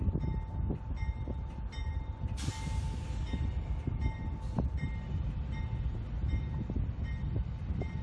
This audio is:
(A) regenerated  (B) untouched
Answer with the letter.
B